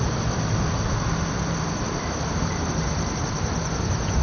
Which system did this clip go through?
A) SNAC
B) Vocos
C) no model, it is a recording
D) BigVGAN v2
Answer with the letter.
C